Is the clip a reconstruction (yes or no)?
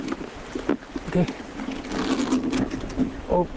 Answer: no